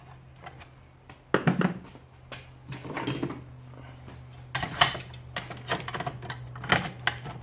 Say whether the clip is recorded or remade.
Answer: recorded